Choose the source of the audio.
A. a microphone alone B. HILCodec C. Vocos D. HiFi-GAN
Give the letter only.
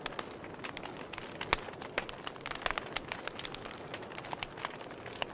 A